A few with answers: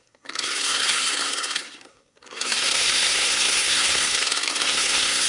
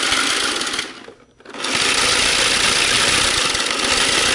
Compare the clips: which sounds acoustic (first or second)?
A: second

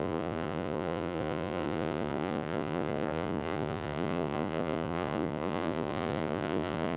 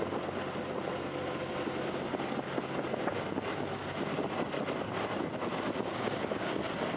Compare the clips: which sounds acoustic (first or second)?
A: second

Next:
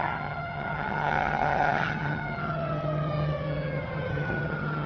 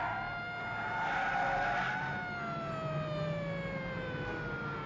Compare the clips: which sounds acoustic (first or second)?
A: second